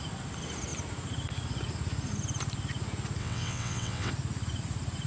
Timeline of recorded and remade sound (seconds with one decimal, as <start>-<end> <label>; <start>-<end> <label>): 0.0-3.2 recorded; 3.2-4.1 remade; 4.1-5.1 recorded